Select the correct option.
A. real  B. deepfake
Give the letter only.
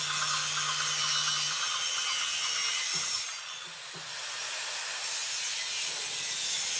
A